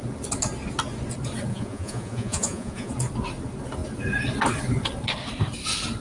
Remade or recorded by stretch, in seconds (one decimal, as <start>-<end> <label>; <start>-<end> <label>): 0.0-1.5 recorded; 1.5-2.9 remade; 2.9-6.0 recorded